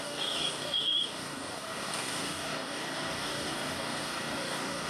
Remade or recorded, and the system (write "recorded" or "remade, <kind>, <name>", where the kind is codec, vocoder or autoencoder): remade, codec, DAC